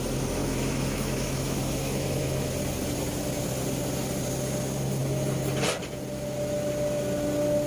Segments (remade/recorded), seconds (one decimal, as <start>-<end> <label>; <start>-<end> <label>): 0.0-0.4 recorded; 0.4-2.5 remade; 2.5-7.7 recorded